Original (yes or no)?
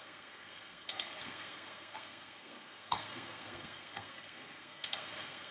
no